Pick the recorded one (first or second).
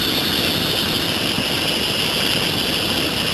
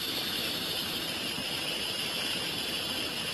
first